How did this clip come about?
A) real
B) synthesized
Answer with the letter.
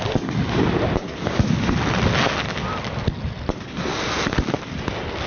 A